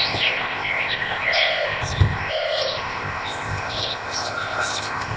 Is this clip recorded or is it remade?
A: remade